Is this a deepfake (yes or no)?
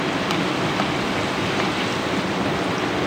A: no